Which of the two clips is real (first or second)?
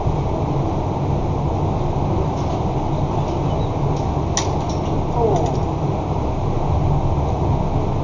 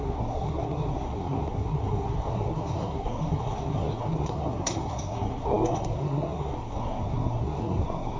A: first